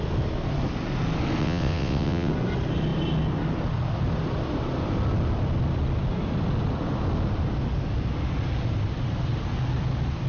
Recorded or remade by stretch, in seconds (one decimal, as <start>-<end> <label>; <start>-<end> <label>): 0.0-1.4 recorded; 1.4-2.3 remade; 2.3-10.3 recorded